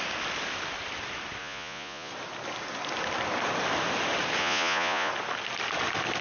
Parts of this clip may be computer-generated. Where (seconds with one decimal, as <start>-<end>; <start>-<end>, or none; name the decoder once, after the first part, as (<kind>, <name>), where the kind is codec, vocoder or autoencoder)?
1.4-2.1 (vocoder, Vocos); 4.4-5.1